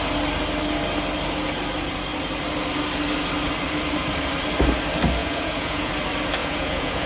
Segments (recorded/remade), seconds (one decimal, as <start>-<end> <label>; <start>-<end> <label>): 0.0-5.2 recorded; 5.2-5.9 remade; 5.9-6.4 recorded; 6.4-7.1 remade